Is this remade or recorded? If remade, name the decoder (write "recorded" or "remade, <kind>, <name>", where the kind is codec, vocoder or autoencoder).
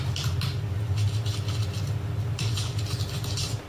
recorded